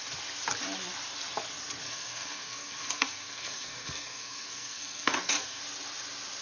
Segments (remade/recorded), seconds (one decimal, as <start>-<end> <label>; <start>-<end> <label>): 0.0-1.8 recorded; 1.8-5.6 remade; 5.6-6.4 recorded